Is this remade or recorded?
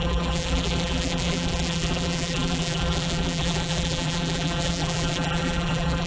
remade